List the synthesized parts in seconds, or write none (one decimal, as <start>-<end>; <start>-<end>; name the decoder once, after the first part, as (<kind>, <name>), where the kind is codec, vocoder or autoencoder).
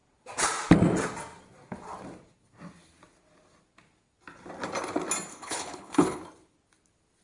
5.3-6.2 (codec, HILCodec)